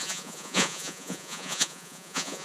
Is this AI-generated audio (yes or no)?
yes